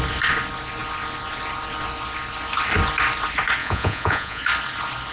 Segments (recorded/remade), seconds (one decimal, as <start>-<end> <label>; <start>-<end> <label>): 0.0-3.6 recorded; 3.6-4.4 remade; 4.4-5.1 recorded